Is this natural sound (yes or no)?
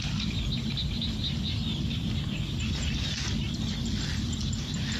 yes